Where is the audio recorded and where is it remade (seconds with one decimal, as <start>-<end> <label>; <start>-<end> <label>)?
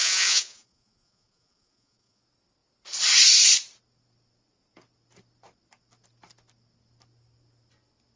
0.0-2.2 remade; 2.2-8.2 recorded